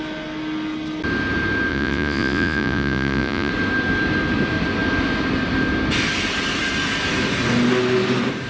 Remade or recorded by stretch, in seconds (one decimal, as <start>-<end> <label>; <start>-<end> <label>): 0.0-1.7 recorded; 1.7-3.5 remade; 3.5-8.5 recorded